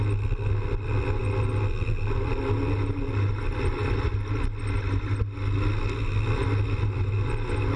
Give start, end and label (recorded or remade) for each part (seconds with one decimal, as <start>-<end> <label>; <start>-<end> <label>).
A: 0.0-7.8 recorded